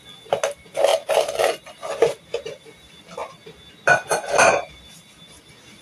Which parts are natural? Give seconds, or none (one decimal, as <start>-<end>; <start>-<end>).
0.0-0.9; 1.7-5.8